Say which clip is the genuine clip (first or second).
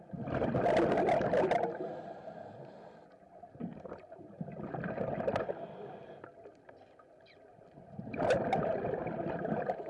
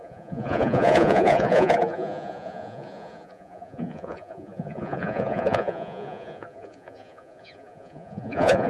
first